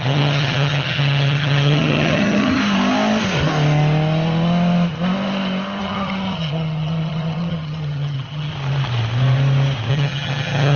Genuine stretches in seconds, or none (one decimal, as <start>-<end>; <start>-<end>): 2.6-5.8; 8.5-9.9